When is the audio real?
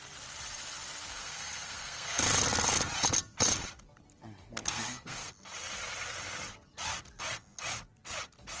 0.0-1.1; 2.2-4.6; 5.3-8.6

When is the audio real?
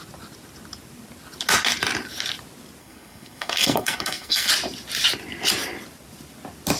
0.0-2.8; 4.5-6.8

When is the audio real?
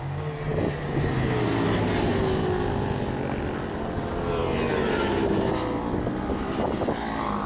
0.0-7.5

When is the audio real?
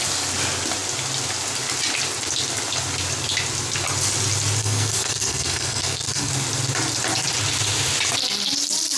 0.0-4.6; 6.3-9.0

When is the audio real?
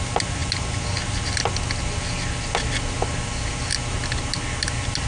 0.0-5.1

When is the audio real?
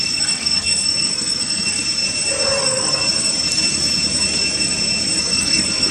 1.8-2.6; 3.0-5.2